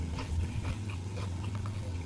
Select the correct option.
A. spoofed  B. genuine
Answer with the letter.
A